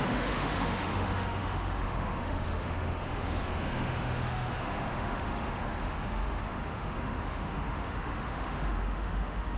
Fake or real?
fake